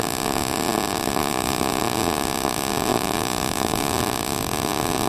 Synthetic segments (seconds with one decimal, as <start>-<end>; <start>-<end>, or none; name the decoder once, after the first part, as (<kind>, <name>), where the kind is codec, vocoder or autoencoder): 1.2-1.8 (autoencoder, DAC-VAE); 2.9-4.0